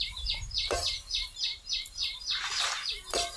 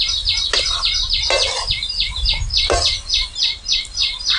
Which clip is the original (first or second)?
second